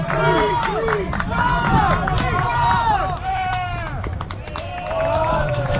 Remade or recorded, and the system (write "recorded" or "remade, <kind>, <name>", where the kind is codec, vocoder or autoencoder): remade, vocoder, BigVGAN v2